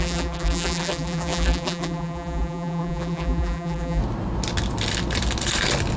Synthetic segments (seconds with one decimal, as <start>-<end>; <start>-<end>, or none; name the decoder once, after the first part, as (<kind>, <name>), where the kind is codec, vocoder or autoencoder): 0.0-4.0 (vocoder, BigVGAN v2)